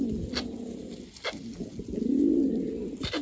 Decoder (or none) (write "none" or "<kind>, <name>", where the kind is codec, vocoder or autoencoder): none